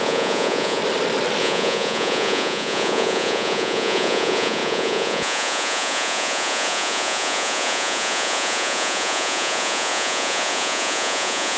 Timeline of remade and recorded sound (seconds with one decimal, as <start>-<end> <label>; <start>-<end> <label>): 0.0-0.8 remade; 0.8-1.4 recorded; 1.4-11.6 remade